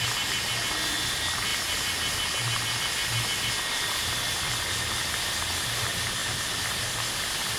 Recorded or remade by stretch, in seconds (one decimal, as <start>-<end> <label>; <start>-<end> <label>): 0.0-7.6 recorded